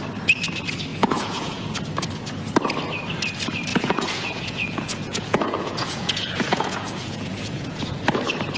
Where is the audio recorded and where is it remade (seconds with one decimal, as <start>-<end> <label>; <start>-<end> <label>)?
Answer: 0.0-0.9 recorded; 0.9-1.8 remade; 1.8-3.7 recorded; 3.7-8.0 remade; 8.0-8.6 recorded